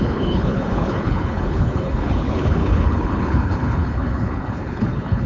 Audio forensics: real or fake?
fake